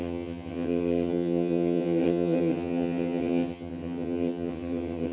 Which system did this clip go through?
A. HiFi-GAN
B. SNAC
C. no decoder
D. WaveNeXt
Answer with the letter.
A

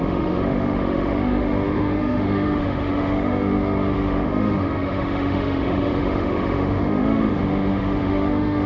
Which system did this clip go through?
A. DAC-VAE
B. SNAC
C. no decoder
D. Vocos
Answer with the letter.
A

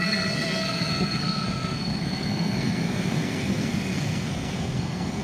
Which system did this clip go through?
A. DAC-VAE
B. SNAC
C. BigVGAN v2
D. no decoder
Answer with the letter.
B